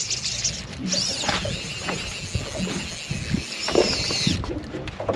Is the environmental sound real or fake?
real